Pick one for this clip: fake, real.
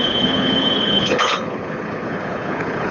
fake